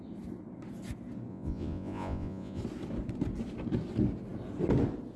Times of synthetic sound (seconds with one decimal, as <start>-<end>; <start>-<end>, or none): 1.3-2.6